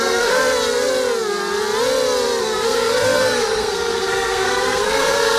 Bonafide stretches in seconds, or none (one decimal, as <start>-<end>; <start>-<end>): 0.4-2.4